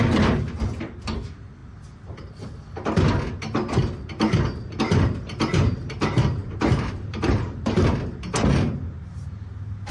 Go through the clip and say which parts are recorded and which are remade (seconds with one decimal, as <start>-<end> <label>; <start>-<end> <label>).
0.0-6.4 recorded; 6.4-7.7 remade; 7.7-9.9 recorded